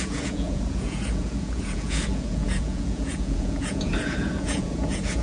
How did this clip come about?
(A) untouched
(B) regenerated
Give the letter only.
B